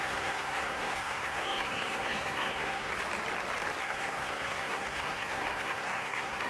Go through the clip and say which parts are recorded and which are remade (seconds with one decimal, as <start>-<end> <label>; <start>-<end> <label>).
0.0-2.9 remade; 2.9-3.8 recorded; 3.8-6.5 remade

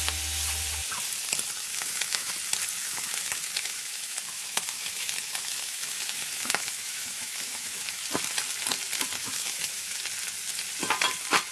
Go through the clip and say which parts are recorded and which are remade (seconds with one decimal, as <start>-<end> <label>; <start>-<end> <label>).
0.0-1.7 recorded; 1.7-2.3 remade; 2.3-2.8 recorded; 2.8-8.0 remade; 8.0-9.2 recorded; 9.2-10.0 remade; 10.0-11.5 recorded